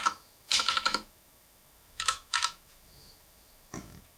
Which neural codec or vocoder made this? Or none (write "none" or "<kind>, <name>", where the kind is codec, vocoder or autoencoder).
autoencoder, DAC-VAE